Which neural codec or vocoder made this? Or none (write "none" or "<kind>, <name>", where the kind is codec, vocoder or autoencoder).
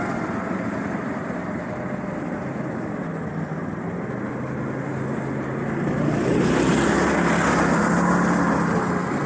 none